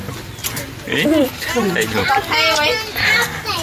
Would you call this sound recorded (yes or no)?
yes